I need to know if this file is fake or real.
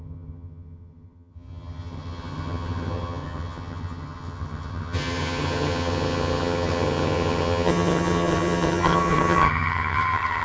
fake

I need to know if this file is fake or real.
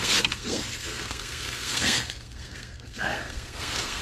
fake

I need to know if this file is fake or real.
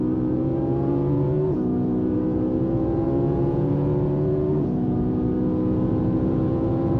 fake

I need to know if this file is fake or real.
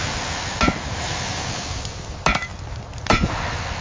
real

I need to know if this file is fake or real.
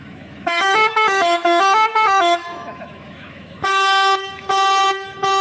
fake